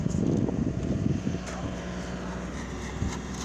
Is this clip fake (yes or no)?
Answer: no